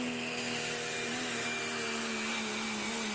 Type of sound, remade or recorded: recorded